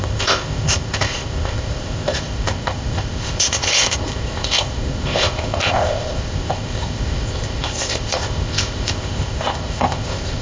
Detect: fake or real fake